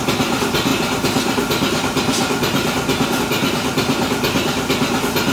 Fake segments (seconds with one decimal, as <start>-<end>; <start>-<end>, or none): none